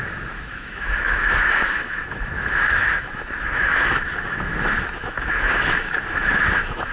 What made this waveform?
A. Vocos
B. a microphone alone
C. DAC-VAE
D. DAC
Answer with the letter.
C